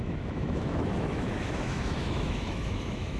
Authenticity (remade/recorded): remade